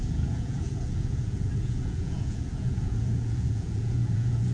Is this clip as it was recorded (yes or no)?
no